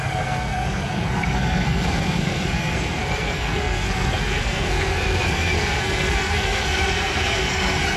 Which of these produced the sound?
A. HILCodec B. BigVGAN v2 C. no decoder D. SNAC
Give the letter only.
D